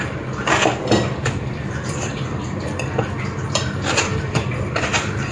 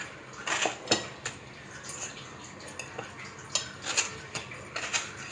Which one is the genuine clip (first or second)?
second